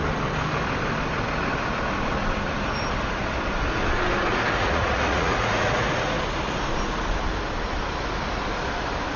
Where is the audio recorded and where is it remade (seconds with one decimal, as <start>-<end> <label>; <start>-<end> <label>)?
0.0-4.3 recorded; 4.3-6.2 remade; 6.2-9.2 recorded